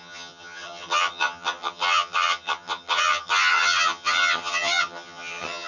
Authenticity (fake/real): fake